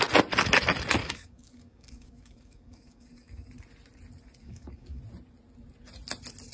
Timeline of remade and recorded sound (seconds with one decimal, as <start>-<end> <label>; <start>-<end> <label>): 0.0-1.0 recorded; 1.0-3.5 remade; 3.5-4.4 recorded; 4.4-5.0 remade; 5.0-6.5 recorded